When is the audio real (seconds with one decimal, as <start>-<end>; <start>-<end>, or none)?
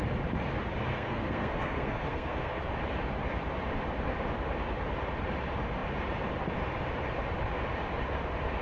0.0-0.9; 2.6-8.6